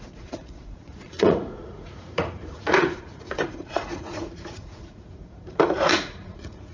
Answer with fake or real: fake